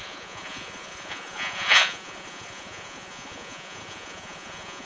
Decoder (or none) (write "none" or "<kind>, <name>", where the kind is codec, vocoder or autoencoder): vocoder, Vocos